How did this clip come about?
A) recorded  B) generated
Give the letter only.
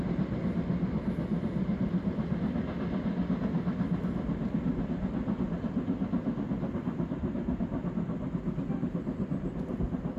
A